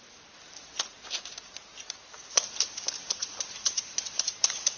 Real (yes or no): no